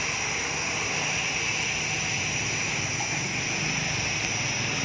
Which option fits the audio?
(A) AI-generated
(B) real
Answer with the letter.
B